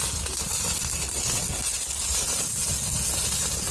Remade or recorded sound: recorded